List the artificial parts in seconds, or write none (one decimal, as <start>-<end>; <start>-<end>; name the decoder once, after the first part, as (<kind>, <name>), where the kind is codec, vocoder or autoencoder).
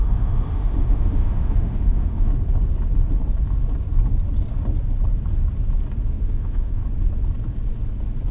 0.0-2.3 (autoencoder, DAC-VAE); 6.1-6.8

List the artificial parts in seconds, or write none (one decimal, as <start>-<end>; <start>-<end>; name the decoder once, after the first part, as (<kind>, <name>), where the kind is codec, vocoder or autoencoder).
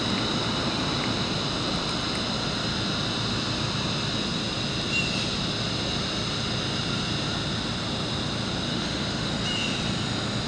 8.7-9.3 (autoencoder, DAC-VAE)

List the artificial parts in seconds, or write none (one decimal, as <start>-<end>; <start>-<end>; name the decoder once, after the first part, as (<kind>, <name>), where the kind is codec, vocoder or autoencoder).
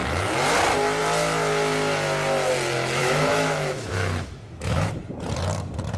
3.0-4.9 (autoencoder, DAC-VAE)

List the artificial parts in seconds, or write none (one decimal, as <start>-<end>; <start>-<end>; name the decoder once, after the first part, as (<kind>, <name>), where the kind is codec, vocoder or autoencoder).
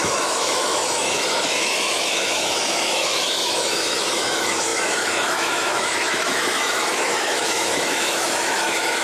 0.0-9.0 (autoencoder, DAC-VAE)